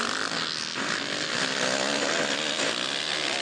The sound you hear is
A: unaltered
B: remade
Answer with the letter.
A